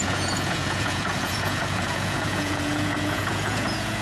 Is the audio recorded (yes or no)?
no